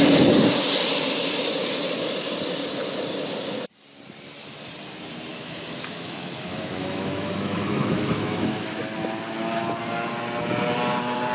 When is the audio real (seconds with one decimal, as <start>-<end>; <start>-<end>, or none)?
0.0-5.3; 8.8-11.3